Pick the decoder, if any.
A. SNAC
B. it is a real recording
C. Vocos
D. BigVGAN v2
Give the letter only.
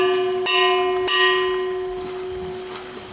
B